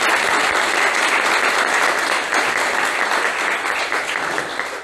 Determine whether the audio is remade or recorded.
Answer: recorded